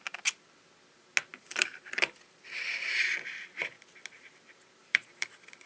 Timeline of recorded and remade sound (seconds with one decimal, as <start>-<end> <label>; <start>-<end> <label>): 0.0-1.3 recorded; 1.3-3.0 remade; 3.0-4.8 recorded; 4.8-5.7 remade

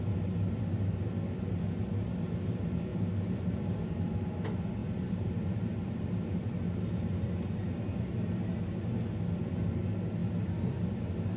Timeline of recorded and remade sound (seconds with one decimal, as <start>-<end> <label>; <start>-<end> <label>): 0.0-2.9 recorded; 2.9-4.0 remade; 4.0-4.8 recorded; 4.8-6.8 remade; 6.8-11.4 recorded

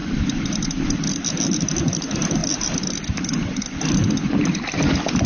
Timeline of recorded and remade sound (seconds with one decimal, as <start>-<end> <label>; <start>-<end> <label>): 0.0-2.4 recorded; 2.4-5.3 remade

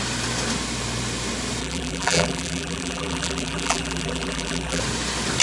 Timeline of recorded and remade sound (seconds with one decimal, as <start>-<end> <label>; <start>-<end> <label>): 0.0-1.6 recorded; 1.6-4.8 remade; 4.8-5.4 recorded

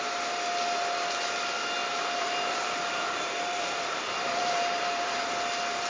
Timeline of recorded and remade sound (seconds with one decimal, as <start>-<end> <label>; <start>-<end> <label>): 0.0-1.8 recorded; 1.8-5.3 remade; 5.3-5.9 recorded

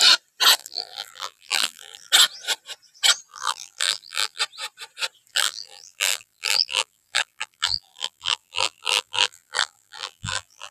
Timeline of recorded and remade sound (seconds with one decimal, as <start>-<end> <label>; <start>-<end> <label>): 0.0-0.6 recorded; 0.6-2.1 remade; 2.1-3.3 recorded; 3.3-4.4 remade; 4.4-5.3 recorded; 5.3-10.7 remade

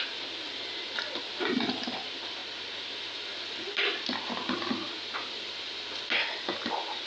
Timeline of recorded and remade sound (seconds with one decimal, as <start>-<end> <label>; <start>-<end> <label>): 0.0-7.1 recorded

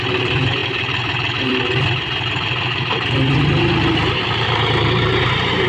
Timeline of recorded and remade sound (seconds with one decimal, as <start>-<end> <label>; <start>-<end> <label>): 0.0-5.7 remade